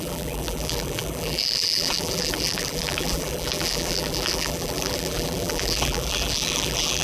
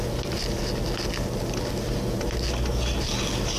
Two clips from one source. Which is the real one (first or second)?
second